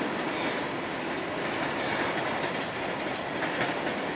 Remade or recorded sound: recorded